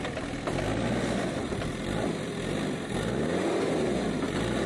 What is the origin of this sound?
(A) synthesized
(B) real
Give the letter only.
B